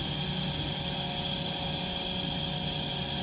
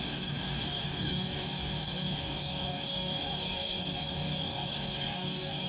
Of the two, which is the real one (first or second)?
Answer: first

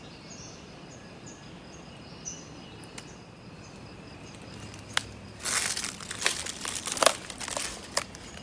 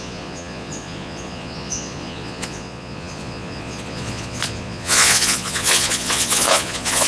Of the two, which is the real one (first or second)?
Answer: first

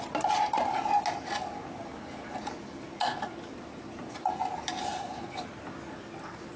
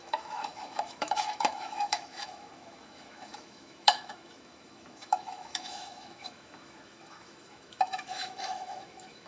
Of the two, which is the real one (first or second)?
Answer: first